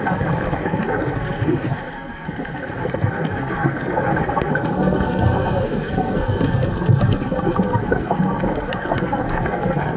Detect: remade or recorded remade